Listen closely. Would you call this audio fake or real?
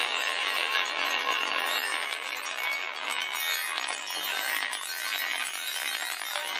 fake